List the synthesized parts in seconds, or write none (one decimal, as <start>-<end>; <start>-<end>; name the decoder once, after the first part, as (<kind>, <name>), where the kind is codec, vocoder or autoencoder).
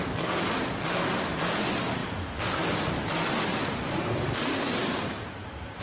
2.0-5.8 (vocoder, BigVGAN v2)